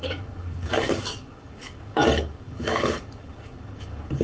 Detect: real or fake fake